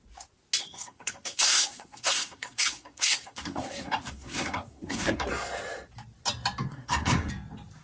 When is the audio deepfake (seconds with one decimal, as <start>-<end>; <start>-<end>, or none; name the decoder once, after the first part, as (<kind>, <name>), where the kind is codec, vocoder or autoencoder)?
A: 0.6-5.3 (codec, SNAC); 6.7-7.3